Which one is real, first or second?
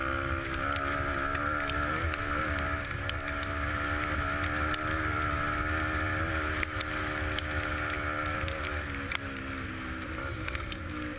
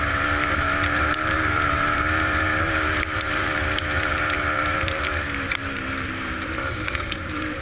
first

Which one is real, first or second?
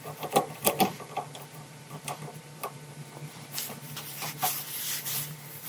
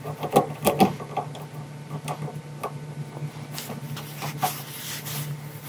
second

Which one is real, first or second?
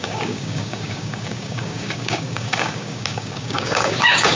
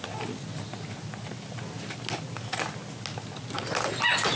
second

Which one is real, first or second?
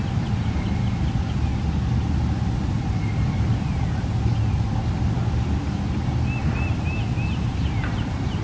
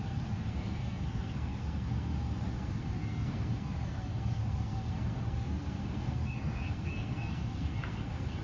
first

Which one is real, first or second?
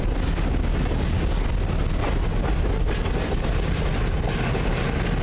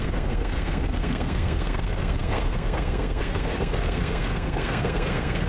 first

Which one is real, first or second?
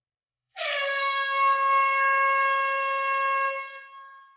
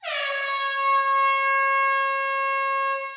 second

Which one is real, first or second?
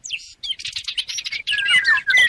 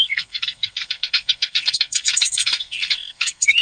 first